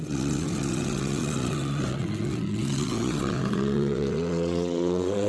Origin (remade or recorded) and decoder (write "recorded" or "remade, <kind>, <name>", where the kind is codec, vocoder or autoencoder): remade, vocoder, WaveNeXt